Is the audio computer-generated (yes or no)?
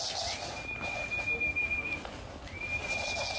no